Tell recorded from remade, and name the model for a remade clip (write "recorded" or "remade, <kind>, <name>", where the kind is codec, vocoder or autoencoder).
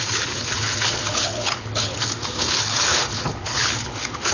remade, codec, HILCodec